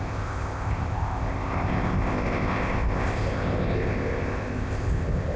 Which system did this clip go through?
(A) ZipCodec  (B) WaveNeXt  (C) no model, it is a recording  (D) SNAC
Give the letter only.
A